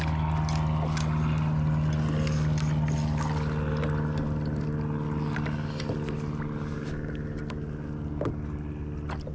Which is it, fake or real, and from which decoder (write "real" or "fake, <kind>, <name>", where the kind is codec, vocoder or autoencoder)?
real